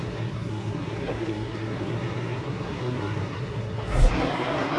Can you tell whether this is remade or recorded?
remade